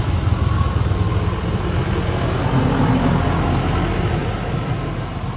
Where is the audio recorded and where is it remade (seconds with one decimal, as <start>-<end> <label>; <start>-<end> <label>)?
0.0-5.4 recorded